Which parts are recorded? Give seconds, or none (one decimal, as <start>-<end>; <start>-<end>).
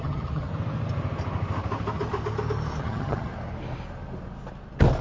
0.5-2.8; 3.3-5.0